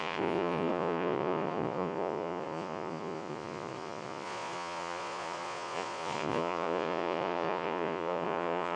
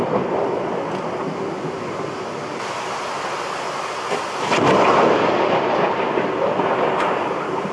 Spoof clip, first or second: first